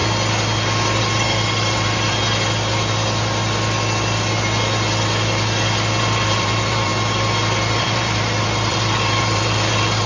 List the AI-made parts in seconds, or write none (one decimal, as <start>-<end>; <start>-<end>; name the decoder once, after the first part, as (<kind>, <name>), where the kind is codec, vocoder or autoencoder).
1.0-2.2 (vocoder, BigVGAN v2); 6.0-6.9; 7.8-10.1